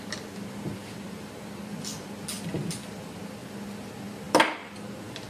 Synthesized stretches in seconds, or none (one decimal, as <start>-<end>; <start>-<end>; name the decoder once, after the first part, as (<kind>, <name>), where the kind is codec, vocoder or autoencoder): 0.7-2.2 (vocoder, BigVGAN v2); 2.6-3.2; 4.6-5.3